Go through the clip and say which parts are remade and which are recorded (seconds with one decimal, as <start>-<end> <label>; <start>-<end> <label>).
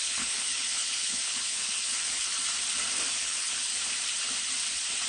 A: 0.0-2.3 remade; 2.3-3.1 recorded; 3.1-3.7 remade; 3.7-5.1 recorded